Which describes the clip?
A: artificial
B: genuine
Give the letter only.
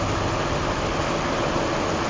B